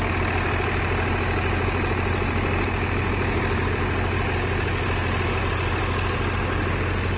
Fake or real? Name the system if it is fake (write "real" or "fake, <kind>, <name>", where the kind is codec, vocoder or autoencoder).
real